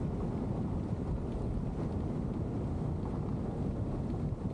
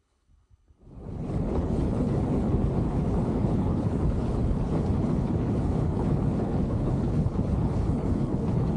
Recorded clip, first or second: first